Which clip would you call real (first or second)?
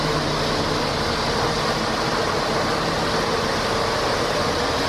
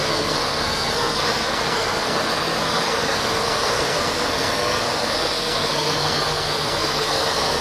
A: first